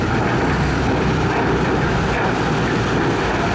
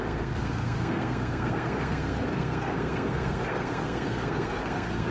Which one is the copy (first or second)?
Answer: second